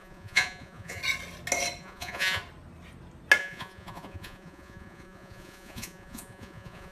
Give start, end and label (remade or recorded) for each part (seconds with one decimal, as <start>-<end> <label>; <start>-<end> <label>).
0.0-1.0 remade; 1.0-1.8 recorded; 1.8-2.4 remade; 2.4-3.4 recorded; 3.4-6.9 remade